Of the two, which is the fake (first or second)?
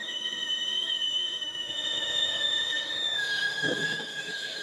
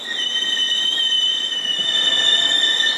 first